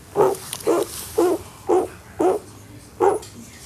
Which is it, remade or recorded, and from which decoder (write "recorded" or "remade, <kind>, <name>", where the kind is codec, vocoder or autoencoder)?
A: recorded